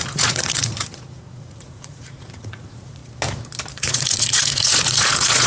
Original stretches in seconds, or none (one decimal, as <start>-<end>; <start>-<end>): 3.0-3.7